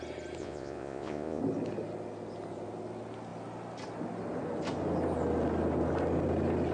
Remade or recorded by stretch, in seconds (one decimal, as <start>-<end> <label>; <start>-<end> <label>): 0.0-0.4 recorded; 0.4-1.4 remade; 1.4-6.7 recorded